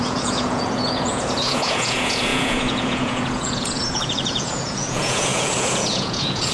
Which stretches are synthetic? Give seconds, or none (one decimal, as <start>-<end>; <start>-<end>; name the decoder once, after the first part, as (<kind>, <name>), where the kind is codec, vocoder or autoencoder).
0.0-6.5 (vocoder, Vocos)